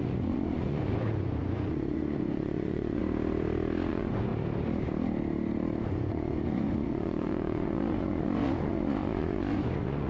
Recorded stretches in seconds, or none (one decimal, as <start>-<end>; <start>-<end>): 3.0-3.9; 4.3-5.9